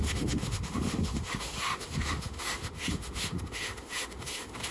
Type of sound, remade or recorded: remade